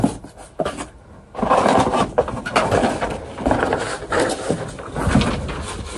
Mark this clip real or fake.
real